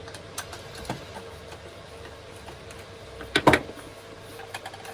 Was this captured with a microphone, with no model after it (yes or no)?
yes